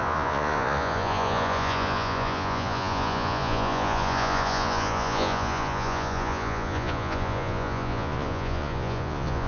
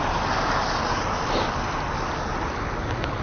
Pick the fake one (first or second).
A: first